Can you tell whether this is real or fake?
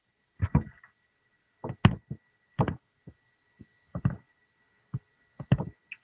real